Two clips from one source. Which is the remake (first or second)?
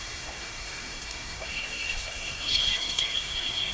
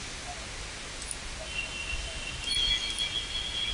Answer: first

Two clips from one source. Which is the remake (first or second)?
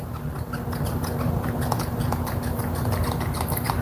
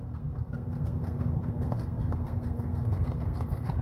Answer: second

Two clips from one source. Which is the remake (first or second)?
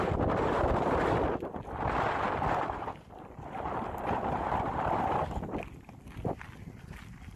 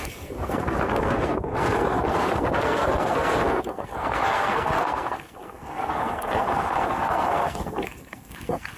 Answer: second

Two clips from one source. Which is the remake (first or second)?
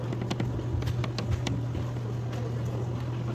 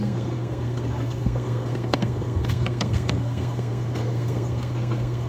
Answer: second